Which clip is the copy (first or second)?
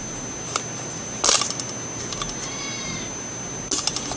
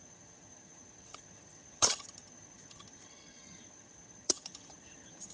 second